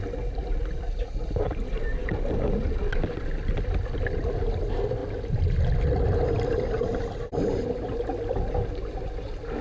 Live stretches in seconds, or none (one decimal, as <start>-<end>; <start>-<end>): 0.0-9.6